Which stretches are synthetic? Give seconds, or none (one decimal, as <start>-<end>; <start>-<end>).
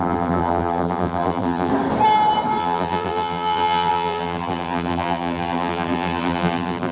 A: 0.0-1.7; 2.6-6.9